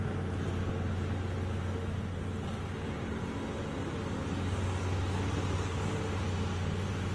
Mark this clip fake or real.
real